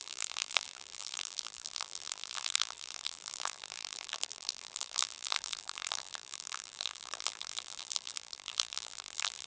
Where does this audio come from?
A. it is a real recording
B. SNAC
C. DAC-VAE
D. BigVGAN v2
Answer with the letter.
D